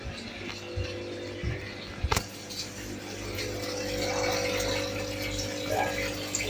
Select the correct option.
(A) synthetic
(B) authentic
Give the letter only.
B